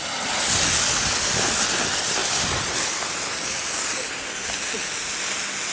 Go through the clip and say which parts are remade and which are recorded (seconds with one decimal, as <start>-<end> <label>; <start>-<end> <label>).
0.0-2.2 recorded; 2.2-4.1 remade; 4.1-5.7 recorded